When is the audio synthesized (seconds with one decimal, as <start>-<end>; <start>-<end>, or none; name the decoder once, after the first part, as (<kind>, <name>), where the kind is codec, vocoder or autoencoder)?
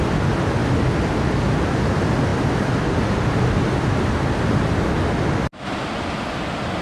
none